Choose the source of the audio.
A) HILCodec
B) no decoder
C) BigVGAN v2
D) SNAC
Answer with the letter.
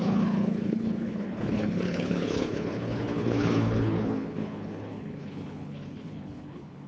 A